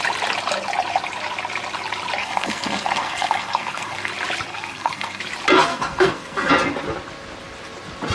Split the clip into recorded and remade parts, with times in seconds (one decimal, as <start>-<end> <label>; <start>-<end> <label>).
0.0-2.2 recorded; 2.2-4.1 remade; 4.1-4.5 recorded; 4.5-5.2 remade; 5.2-5.7 recorded; 5.7-6.5 remade; 6.5-8.1 recorded